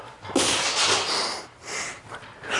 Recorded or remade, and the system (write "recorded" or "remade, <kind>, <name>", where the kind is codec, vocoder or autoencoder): recorded